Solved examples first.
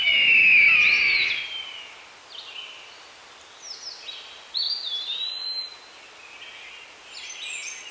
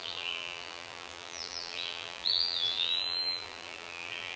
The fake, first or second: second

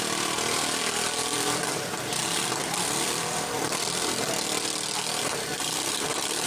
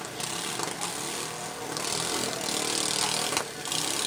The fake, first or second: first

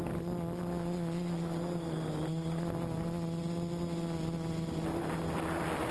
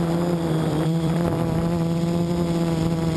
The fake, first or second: second